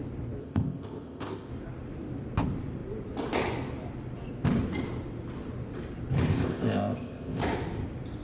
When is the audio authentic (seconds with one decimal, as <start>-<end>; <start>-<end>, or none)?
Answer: 0.0-0.4; 1.5-6.3; 7.4-8.2